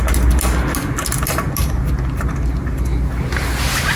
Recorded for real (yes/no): yes